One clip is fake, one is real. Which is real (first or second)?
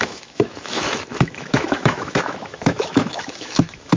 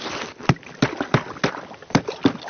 second